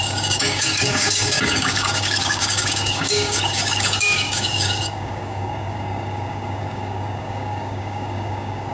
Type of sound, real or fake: fake